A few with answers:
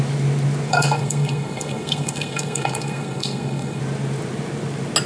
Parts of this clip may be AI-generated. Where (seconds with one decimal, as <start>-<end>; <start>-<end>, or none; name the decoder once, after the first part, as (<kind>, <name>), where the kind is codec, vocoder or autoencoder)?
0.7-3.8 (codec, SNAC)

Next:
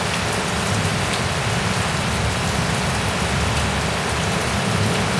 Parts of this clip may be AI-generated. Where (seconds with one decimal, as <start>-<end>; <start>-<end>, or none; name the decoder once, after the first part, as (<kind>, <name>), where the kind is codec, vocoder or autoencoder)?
none

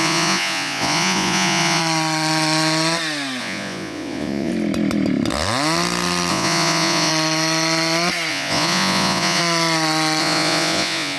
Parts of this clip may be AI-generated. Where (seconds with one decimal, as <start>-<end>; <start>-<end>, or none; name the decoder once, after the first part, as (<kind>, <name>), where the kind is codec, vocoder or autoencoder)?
0.0-1.8 (vocoder, Vocos); 3.4-4.5; 6.3-7.1; 8.3-9.4; 10.2-11.2